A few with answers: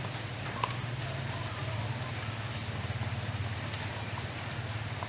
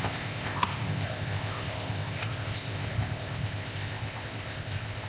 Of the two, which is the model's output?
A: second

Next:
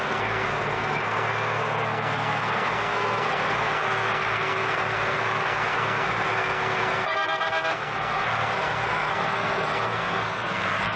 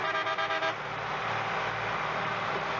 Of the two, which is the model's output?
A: first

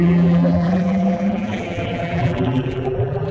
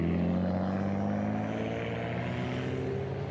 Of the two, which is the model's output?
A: first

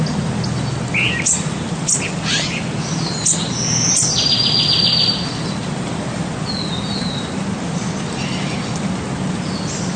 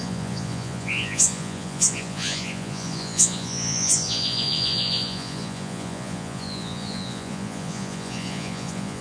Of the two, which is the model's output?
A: second